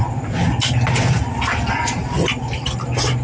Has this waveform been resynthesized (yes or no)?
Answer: no